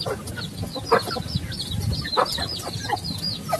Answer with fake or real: real